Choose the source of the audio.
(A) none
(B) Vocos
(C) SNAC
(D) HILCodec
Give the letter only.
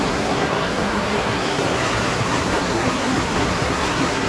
C